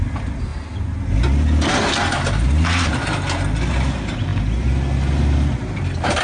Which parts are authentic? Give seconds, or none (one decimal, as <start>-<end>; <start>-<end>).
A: 0.0-6.2